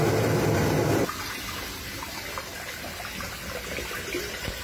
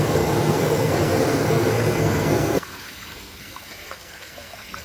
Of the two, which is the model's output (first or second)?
second